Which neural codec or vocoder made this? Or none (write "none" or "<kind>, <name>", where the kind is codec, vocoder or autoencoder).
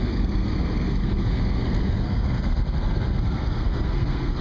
codec, SNAC